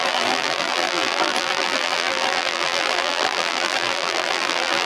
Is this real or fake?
fake